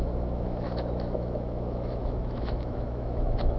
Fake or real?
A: fake